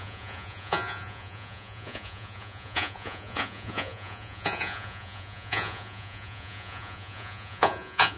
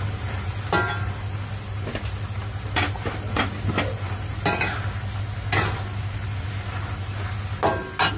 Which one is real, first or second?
second